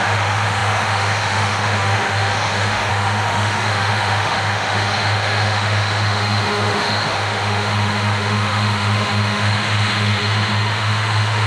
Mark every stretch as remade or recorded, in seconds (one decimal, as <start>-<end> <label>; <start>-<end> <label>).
0.0-11.5 remade